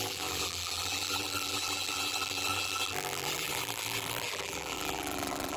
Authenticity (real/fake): fake